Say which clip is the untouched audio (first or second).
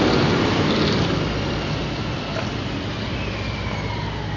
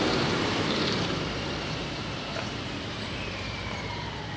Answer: first